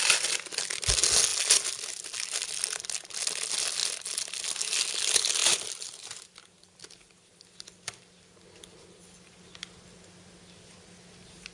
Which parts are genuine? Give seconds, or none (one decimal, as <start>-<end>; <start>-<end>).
0.0-11.5